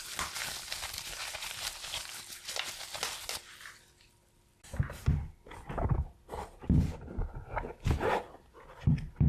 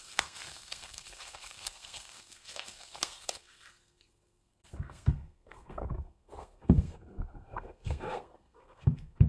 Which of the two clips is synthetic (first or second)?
second